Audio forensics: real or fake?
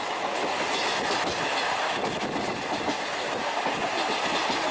real